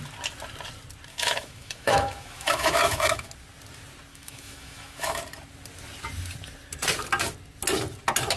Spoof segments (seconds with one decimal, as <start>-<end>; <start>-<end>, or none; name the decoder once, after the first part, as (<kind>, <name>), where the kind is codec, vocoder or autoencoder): 1.1-3.3 (autoencoder, DAC-VAE); 4.1-5.2